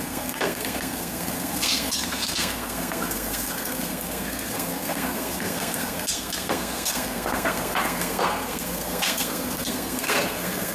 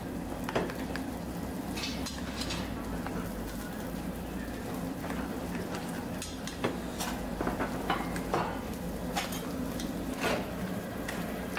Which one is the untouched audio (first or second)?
second